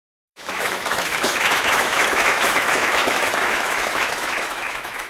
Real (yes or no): no